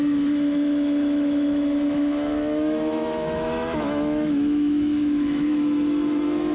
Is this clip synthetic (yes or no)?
yes